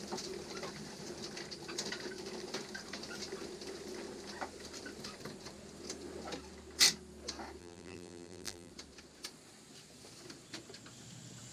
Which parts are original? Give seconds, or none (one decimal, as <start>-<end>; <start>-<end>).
0.0-7.6; 8.7-11.5